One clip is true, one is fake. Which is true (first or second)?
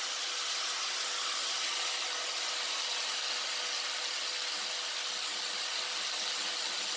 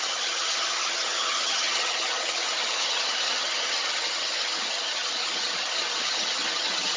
first